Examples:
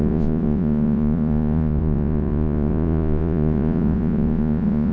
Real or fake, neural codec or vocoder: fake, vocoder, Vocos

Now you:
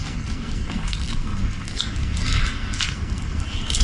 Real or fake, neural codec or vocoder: fake, codec, SNAC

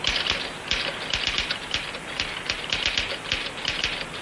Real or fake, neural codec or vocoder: real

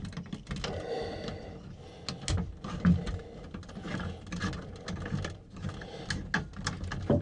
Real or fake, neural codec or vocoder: real